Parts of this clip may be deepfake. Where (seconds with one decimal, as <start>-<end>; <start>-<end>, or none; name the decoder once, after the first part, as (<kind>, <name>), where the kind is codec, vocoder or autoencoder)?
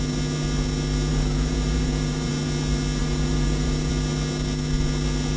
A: 1.1-2.3 (vocoder, Vocos); 3.0-3.9